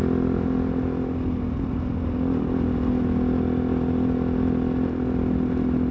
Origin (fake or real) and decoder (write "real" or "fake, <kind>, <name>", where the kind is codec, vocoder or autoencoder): real